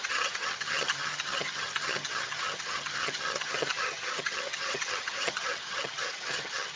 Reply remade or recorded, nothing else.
remade